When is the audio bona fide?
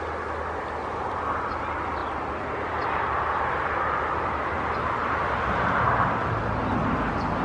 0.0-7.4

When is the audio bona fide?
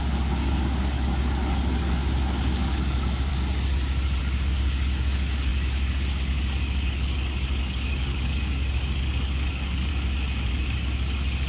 3.3-4.2; 9.9-10.5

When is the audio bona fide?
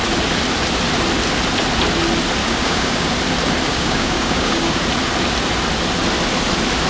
0.0-2.4; 3.1-3.7; 4.8-6.9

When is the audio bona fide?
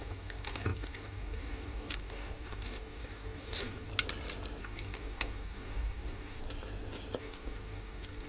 3.9-4.6; 6.4-7.2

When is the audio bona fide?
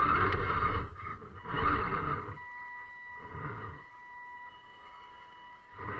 0.0-0.7; 1.1-3.4; 3.9-4.5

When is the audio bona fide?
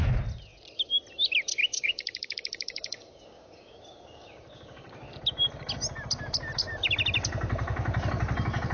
0.0-1.7; 5.1-8.7